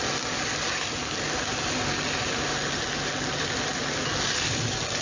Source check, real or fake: real